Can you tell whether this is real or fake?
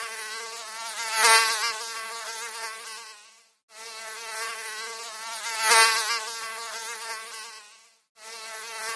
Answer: real